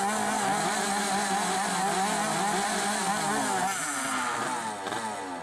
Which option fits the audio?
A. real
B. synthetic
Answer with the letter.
A